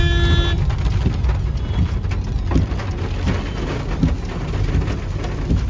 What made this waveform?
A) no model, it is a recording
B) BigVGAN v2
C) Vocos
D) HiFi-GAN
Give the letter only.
A